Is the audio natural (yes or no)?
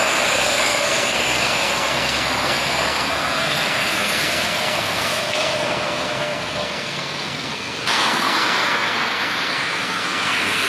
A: no